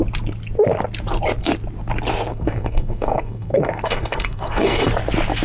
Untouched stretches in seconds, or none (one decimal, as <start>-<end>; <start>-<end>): 0.0-2.3; 4.9-5.4